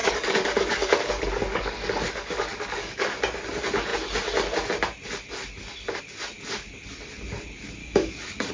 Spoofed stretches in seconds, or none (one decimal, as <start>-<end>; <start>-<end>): 0.0-3.2; 7.8-8.5